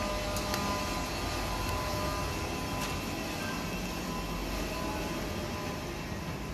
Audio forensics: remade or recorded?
recorded